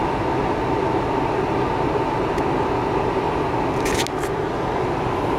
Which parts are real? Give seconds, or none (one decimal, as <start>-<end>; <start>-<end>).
0.0-5.4